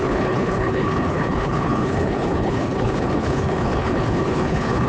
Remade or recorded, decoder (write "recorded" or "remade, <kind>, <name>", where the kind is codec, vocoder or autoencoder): remade, codec, HILCodec